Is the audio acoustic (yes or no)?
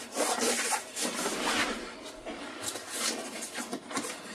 yes